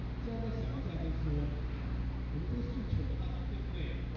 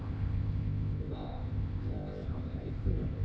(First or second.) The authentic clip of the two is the first